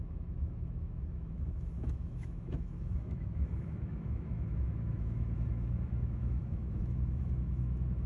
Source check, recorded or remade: remade